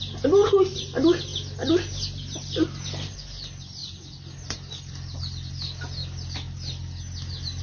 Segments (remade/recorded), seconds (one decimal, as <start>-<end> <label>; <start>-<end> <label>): 0.0-7.6 recorded